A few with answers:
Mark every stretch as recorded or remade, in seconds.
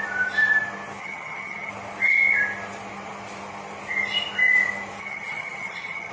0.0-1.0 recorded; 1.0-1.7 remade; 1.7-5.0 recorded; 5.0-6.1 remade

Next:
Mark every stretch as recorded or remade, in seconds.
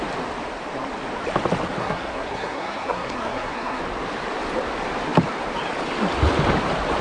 0.0-1.8 recorded; 1.8-3.8 remade; 3.8-7.0 recorded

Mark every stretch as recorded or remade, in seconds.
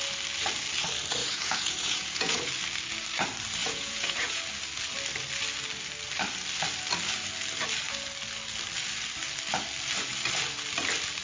0.0-1.2 recorded; 1.2-2.5 remade; 2.5-3.6 recorded; 3.6-4.4 remade; 4.4-11.2 recorded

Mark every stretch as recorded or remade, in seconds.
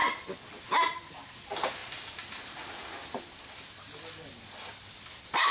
0.0-5.5 recorded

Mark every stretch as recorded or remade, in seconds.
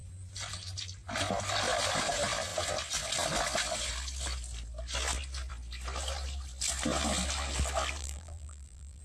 0.0-8.0 recorded; 8.0-9.0 remade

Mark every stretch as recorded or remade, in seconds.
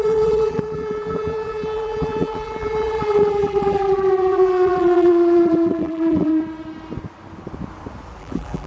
0.0-6.3 remade; 6.3-8.2 recorded; 8.2-8.7 remade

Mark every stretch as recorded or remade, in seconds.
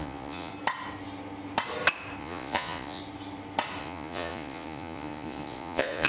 0.0-0.5 remade; 0.5-2.2 recorded; 2.2-3.0 remade; 3.0-3.8 recorded; 3.8-6.1 remade